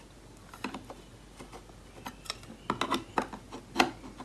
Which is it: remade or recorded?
recorded